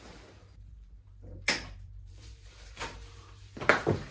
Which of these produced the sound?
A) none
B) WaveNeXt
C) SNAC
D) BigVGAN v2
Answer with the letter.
D